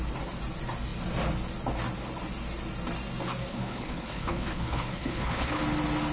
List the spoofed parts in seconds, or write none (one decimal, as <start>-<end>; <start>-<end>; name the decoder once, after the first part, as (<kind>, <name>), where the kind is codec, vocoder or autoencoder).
3.5-5.6 (codec, HILCodec)